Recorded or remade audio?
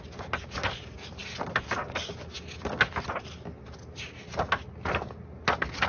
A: recorded